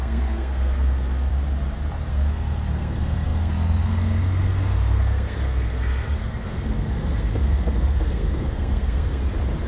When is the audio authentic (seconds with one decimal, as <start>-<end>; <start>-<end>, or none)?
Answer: 1.3-2.1; 9.2-9.7